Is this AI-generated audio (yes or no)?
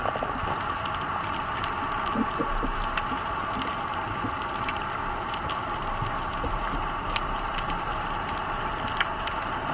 no